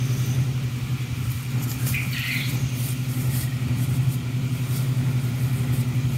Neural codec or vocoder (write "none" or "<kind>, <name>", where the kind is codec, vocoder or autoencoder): none